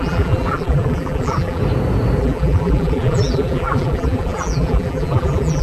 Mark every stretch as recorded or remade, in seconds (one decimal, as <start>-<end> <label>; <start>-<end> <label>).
0.0-1.6 remade; 1.6-2.2 recorded; 2.2-5.6 remade

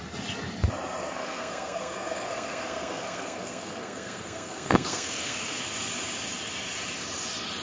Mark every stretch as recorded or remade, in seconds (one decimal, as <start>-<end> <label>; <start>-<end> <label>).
0.0-1.0 recorded; 1.0-5.6 remade; 5.6-7.6 recorded

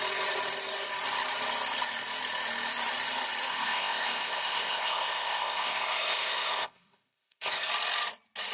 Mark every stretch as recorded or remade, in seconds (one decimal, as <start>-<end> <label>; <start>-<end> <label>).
0.0-3.5 recorded; 3.5-7.7 remade; 7.7-8.5 recorded